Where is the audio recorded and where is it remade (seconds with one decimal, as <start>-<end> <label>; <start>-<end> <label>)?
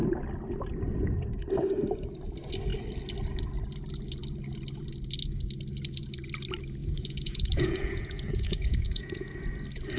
0.0-6.8 recorded; 6.8-9.3 remade; 9.3-10.0 recorded